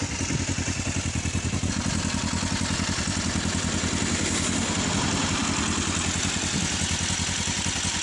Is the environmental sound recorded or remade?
recorded